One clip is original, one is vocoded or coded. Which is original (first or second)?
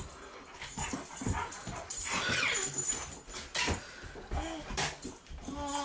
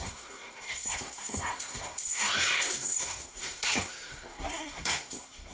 first